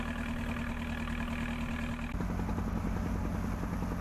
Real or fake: real